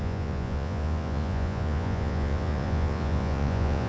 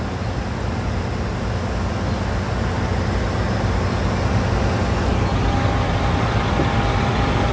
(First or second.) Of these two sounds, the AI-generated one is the first